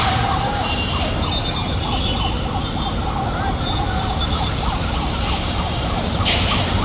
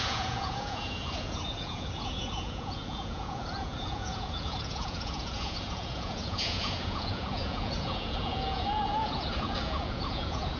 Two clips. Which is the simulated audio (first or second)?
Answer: second